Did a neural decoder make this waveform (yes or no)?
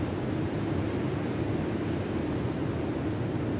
no